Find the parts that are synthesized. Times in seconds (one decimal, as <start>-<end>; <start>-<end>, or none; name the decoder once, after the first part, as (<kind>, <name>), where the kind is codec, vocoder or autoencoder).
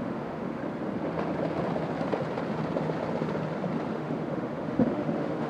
0.0-0.6 (autoencoder, DAC-VAE); 3.9-5.5